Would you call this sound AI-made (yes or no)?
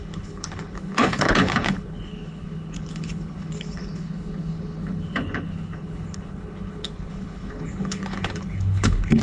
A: yes